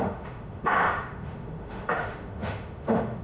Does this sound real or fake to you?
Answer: fake